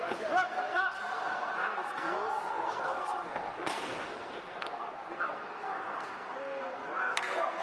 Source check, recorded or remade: remade